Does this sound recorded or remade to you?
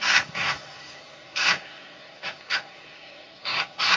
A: remade